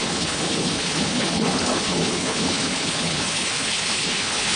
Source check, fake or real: fake